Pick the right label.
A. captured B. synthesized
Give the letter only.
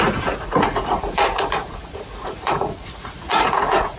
B